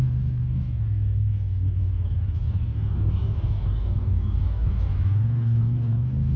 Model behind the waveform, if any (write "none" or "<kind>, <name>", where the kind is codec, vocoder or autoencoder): codec, DAC